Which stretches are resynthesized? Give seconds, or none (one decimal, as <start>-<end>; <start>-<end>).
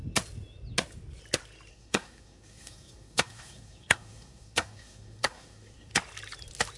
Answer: 1.7-5.9